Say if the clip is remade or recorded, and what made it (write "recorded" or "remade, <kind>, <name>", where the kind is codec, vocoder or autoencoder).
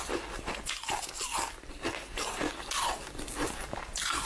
recorded